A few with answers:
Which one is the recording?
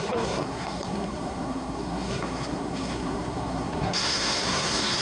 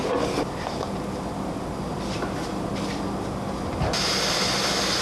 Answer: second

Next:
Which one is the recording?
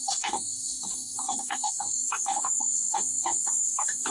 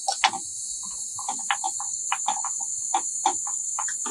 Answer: second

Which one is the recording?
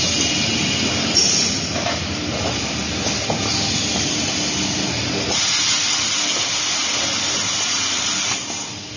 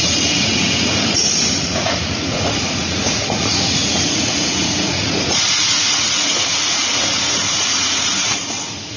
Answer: first